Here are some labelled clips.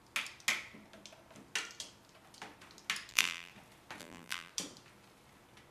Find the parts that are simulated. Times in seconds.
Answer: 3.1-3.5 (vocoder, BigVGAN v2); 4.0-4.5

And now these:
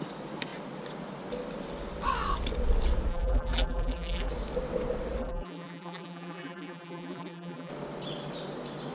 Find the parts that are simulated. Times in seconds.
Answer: 3.1-4.3 (vocoder, BigVGAN v2); 5.2-7.7

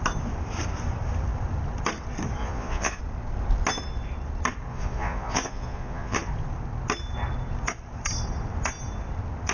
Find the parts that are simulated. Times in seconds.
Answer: 2.4-3.0 (vocoder, Vocos); 4.7-6.3

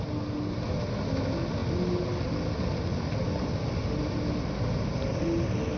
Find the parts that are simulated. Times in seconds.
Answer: none

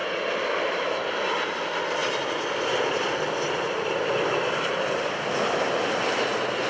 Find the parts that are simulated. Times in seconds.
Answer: none

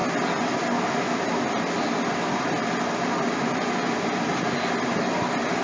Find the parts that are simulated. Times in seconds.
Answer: none

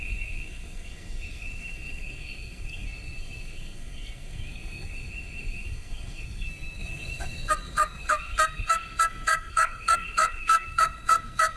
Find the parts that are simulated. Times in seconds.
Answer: 0.0-11.6 (codec, SNAC)

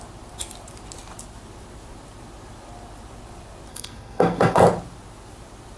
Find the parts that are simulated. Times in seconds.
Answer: 3.7-4.6 (codec, SNAC)